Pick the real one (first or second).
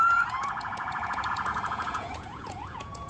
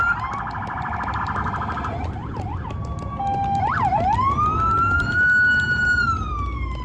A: second